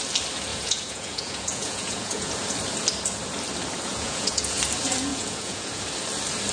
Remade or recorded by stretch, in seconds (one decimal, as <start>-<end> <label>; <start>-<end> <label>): 0.0-0.5 recorded; 0.5-2.3 remade; 2.3-3.9 recorded; 3.9-4.6 remade; 4.6-5.1 recorded; 5.1-5.8 remade; 5.8-6.5 recorded